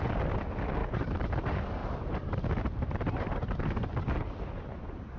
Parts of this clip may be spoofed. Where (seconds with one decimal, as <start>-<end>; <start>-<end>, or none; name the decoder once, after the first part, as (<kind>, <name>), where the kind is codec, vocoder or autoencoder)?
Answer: 0.8-1.3 (vocoder, BigVGAN v2); 1.8-5.2